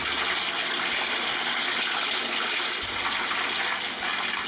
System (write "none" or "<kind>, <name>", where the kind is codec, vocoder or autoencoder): none